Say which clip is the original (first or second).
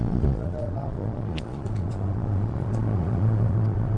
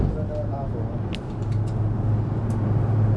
second